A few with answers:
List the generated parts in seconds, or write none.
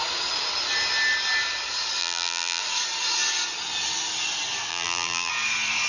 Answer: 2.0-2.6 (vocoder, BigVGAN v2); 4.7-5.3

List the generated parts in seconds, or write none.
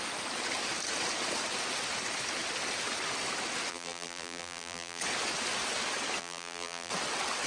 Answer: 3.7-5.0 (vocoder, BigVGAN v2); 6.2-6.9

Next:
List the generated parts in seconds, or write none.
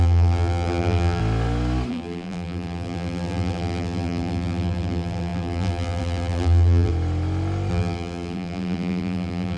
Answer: 0.0-1.2 (vocoder, BigVGAN v2); 1.9-6.9; 7.7-9.6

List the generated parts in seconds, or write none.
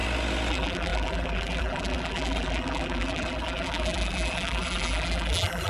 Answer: 0.5-5.7 (vocoder, BigVGAN v2)